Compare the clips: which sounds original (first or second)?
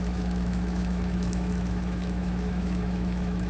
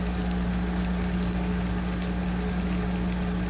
second